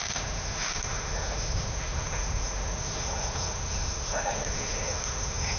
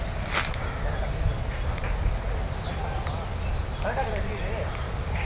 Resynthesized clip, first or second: first